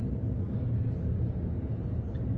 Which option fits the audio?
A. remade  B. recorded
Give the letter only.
B